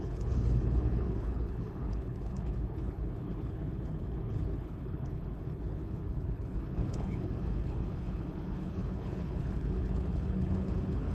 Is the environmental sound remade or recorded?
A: remade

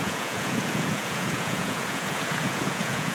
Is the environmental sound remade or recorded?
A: remade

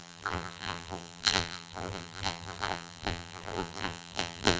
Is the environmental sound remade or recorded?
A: remade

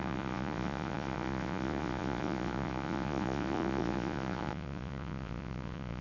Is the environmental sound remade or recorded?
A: remade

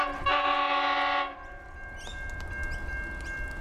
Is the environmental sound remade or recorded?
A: recorded